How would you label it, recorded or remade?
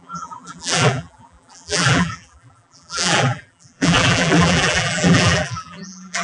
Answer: remade